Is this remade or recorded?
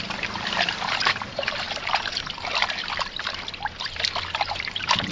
remade